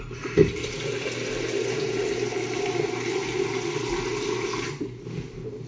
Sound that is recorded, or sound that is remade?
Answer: recorded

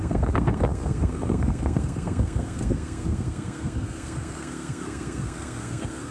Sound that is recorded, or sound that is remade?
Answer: remade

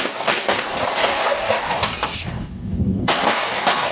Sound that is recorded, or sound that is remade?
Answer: remade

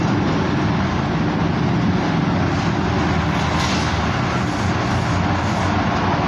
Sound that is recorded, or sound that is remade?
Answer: recorded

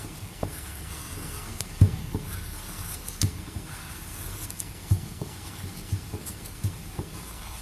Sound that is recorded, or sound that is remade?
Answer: remade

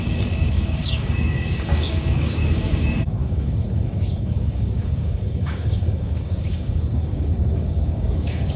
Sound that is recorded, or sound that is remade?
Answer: remade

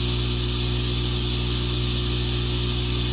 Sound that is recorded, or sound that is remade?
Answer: recorded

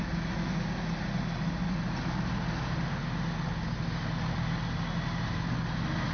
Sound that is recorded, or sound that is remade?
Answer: recorded